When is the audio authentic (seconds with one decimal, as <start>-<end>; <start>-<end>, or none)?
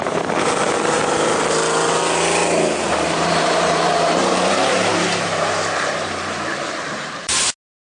0.0-2.4; 7.1-7.8